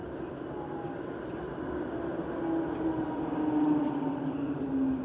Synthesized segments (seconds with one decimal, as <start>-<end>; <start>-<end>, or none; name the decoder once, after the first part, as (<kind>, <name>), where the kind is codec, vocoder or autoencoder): none